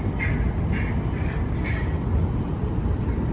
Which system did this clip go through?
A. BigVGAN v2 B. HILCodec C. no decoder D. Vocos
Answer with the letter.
C